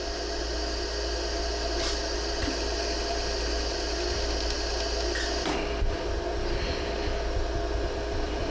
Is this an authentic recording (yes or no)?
yes